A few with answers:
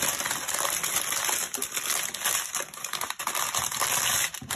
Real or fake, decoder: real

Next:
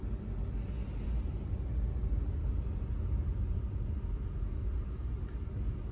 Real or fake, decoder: real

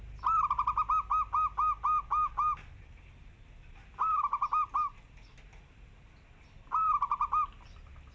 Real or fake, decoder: real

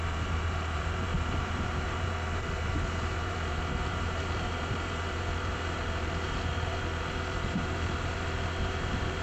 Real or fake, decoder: fake, vocoder, BigVGAN v2